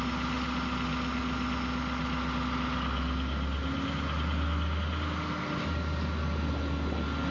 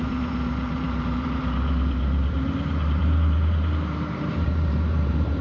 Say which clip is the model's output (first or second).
second